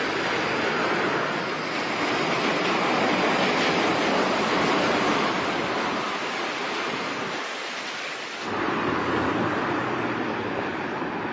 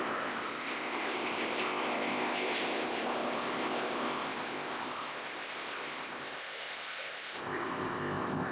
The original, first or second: first